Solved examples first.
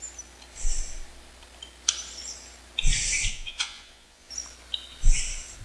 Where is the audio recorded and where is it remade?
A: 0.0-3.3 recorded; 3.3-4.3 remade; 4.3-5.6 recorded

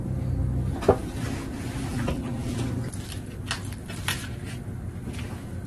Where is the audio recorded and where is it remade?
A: 0.0-1.9 recorded; 1.9-2.6 remade; 2.6-5.7 recorded

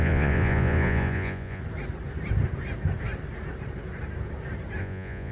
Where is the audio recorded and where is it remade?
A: 0.0-1.6 remade; 1.6-4.8 recorded; 4.8-5.3 remade

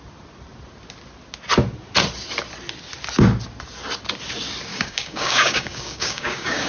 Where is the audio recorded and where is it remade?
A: 0.0-4.7 recorded; 4.7-6.7 remade

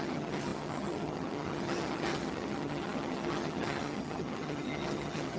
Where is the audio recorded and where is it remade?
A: 0.0-5.4 remade

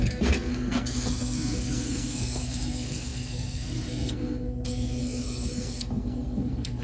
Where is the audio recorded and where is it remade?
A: 0.0-6.8 remade

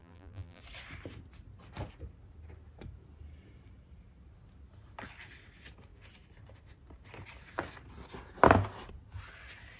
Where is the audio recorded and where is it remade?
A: 0.0-0.6 remade; 0.6-9.8 recorded